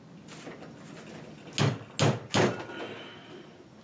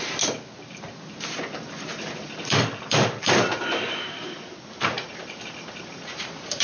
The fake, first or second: second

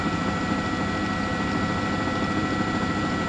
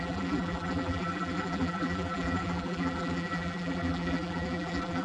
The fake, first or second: second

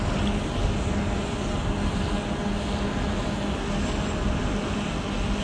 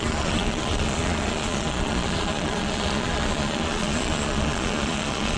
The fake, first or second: second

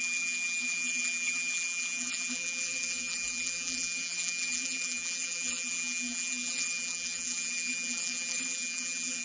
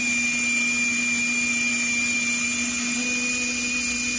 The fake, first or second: first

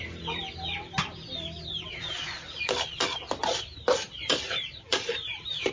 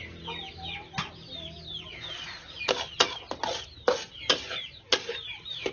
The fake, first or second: first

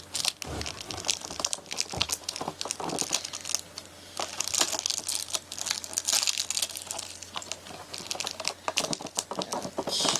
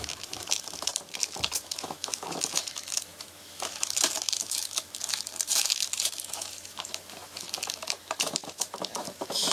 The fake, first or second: second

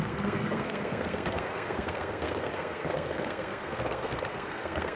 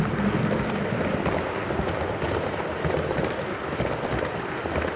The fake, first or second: first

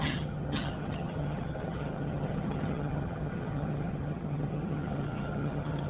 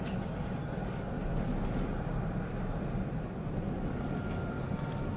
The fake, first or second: first